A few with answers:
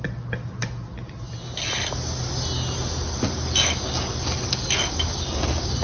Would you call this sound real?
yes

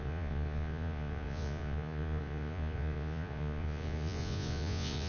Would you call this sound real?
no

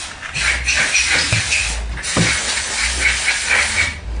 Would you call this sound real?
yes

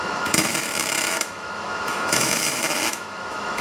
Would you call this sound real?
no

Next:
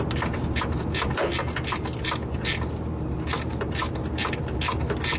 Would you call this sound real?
yes